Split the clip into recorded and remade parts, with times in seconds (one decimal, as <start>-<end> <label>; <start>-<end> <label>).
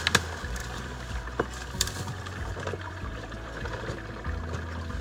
0.0-0.6 recorded; 0.6-3.6 remade; 3.6-5.0 recorded